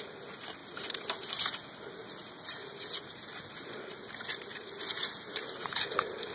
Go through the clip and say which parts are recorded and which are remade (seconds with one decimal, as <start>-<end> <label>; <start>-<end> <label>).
0.0-0.6 recorded; 0.6-1.8 remade; 1.8-2.2 recorded; 2.2-3.9 remade; 3.9-4.5 recorded; 4.5-6.3 remade